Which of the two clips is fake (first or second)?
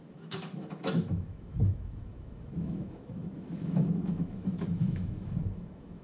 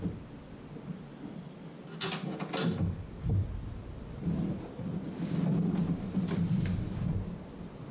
first